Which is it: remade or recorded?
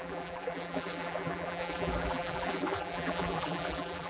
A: remade